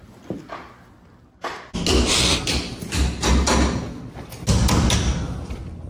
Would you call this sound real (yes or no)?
yes